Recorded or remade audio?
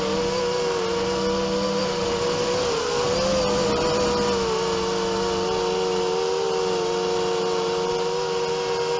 recorded